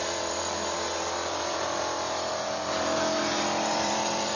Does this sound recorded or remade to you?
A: remade